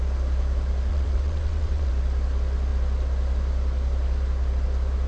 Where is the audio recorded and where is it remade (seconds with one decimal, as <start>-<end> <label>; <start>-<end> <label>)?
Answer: 0.0-0.9 recorded; 0.9-1.9 remade; 1.9-5.1 recorded